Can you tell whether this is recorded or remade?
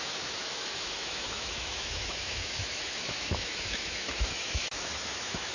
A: remade